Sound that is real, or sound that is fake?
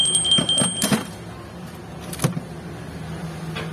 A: real